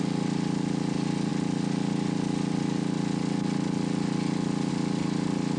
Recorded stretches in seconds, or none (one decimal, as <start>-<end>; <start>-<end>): 0.0-5.6